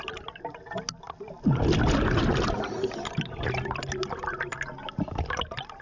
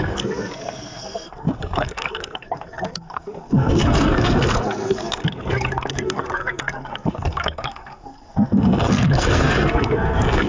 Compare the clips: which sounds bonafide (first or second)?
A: first